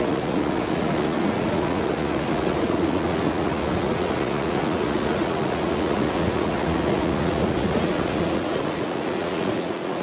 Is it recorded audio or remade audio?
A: remade